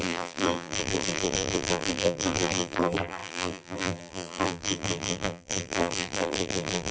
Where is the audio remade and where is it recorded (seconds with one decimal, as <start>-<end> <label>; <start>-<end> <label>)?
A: 0.0-6.9 remade